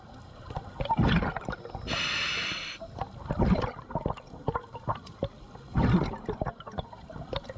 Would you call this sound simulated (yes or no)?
no